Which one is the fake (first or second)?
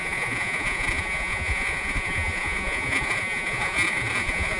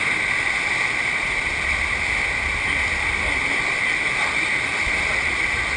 first